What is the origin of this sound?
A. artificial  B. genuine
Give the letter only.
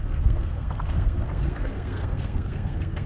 A